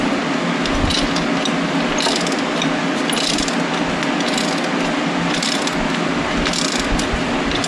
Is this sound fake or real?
real